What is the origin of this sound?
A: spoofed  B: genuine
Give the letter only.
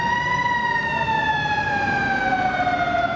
A